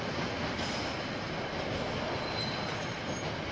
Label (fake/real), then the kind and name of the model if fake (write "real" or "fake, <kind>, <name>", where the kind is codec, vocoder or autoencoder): real